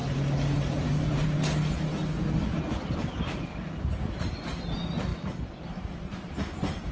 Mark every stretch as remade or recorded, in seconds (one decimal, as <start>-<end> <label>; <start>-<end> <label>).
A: 0.0-1.4 remade; 1.4-1.9 recorded; 1.9-3.5 remade; 3.5-5.1 recorded; 5.1-6.1 remade; 6.1-6.9 recorded

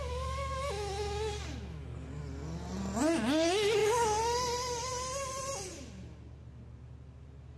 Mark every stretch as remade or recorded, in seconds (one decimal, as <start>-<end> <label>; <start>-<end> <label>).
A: 0.0-7.6 recorded

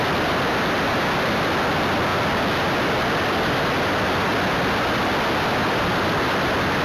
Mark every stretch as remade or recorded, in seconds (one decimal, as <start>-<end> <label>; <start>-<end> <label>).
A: 0.0-6.8 recorded

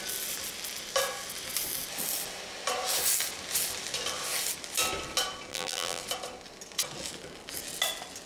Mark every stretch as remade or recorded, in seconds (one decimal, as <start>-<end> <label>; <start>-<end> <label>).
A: 0.0-5.5 recorded; 5.5-6.0 remade; 6.0-8.3 recorded

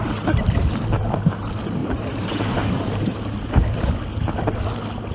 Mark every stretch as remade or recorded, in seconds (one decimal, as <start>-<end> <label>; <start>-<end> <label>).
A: 0.0-0.8 remade; 0.8-1.8 recorded; 1.8-3.9 remade; 3.9-5.1 recorded

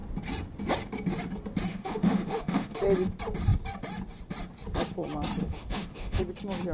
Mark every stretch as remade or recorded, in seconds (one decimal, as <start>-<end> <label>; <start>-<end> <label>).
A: 0.0-1.7 recorded; 1.7-2.8 remade; 2.8-5.4 recorded; 5.4-6.2 remade; 6.2-6.7 recorded